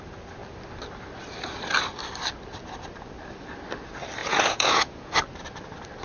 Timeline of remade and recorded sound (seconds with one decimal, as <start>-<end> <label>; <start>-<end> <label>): 0.0-4.2 recorded; 4.2-5.1 remade; 5.1-6.0 recorded

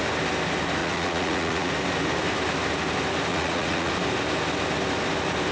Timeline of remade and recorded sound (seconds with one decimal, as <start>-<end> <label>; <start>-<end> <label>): 0.0-0.8 recorded; 0.8-1.7 remade; 1.7-3.3 recorded; 3.3-3.9 remade; 3.9-5.5 recorded

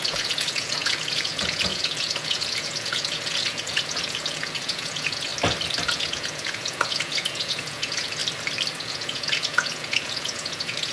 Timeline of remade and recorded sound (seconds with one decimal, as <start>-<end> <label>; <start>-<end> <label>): 0.0-5.3 remade; 5.3-5.9 recorded; 5.9-8.2 remade; 8.2-8.8 recorded; 8.8-10.9 remade

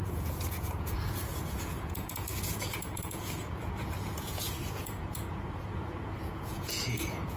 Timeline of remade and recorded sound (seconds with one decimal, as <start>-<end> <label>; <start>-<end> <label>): 0.0-7.4 remade